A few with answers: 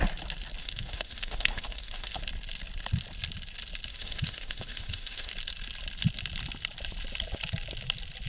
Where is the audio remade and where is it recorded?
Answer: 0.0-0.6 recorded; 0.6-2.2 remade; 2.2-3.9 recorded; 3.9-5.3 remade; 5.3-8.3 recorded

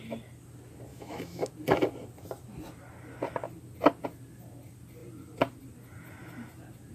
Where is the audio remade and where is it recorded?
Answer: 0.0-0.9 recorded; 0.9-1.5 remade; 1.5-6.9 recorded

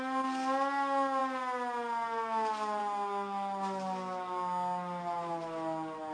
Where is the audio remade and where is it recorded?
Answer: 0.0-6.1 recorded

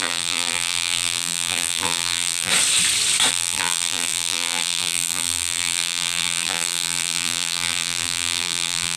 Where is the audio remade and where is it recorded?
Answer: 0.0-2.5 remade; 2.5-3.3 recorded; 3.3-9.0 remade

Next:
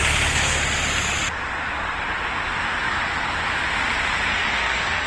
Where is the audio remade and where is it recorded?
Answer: 0.0-4.3 recorded; 4.3-5.1 remade

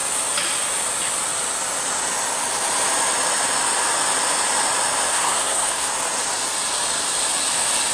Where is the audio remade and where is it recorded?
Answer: 0.0-5.1 recorded; 5.1-5.9 remade; 5.9-7.9 recorded